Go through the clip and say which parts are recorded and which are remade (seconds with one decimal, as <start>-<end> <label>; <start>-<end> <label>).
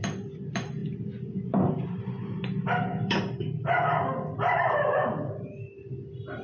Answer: 0.0-6.4 remade